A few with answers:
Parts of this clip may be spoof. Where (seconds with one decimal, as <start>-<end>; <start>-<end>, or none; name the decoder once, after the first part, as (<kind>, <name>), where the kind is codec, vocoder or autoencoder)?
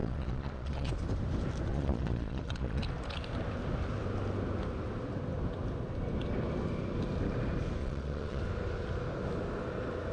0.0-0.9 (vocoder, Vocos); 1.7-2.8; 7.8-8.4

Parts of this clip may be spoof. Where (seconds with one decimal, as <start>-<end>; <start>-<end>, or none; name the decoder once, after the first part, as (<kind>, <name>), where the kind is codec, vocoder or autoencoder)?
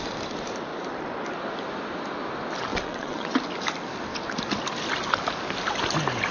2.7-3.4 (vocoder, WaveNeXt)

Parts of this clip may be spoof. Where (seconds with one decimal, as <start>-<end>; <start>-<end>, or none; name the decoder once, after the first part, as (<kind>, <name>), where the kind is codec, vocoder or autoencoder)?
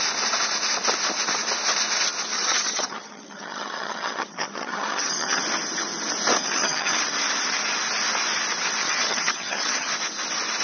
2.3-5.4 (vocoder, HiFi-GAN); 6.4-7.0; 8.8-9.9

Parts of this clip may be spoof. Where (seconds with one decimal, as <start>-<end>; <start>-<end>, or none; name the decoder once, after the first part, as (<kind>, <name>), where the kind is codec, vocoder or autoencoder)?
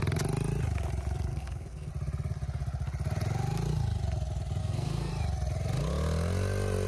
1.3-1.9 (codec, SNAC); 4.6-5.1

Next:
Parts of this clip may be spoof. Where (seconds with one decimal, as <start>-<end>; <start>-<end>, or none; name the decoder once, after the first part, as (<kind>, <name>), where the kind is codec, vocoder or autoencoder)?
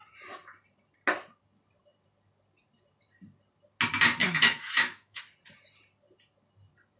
4.2-5.2 (autoencoder, DAC-VAE)